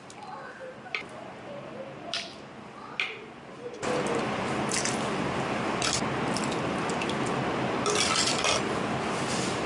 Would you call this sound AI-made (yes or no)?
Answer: no